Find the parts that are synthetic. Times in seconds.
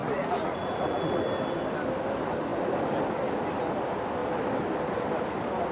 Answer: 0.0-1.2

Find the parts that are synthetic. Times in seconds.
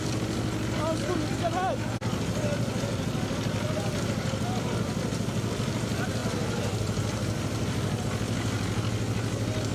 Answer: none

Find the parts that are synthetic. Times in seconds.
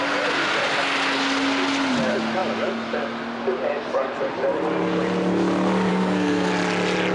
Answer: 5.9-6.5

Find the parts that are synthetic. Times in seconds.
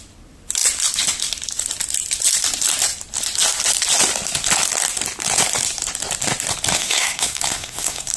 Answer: 6.7-8.2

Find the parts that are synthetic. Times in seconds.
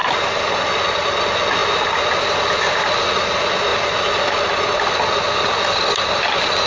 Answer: none